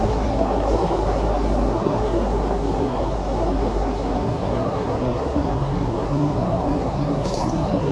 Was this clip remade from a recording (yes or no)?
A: yes